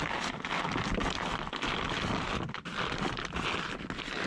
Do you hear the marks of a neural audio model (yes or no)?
no